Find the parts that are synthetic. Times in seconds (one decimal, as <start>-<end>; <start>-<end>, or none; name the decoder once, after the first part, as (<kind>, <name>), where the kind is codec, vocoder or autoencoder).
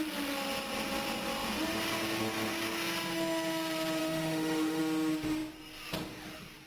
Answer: 4.0-4.8 (autoencoder, DAC-VAE)